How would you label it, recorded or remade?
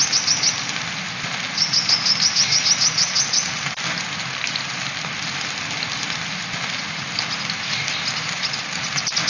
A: recorded